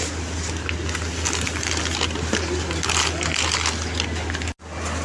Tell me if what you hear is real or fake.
real